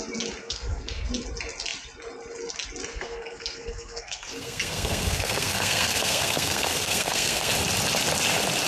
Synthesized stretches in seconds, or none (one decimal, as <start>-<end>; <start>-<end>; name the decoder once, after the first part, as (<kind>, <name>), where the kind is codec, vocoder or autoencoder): 0.4-1.1 (codec, SNAC); 2.9-7.5